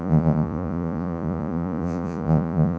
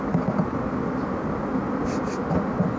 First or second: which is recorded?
second